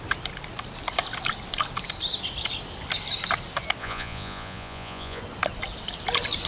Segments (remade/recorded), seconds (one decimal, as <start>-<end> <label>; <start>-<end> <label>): 0.0-3.8 recorded; 3.8-5.2 remade; 5.2-6.5 recorded